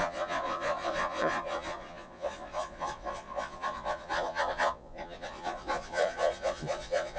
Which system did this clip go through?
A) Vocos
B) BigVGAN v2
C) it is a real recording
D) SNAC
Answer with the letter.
A